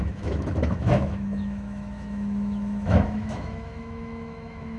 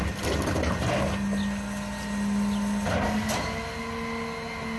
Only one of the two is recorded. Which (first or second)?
second